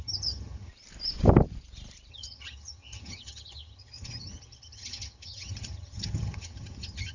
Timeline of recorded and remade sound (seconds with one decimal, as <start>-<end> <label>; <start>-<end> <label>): 0.0-0.7 remade; 0.7-2.1 recorded; 2.1-7.1 remade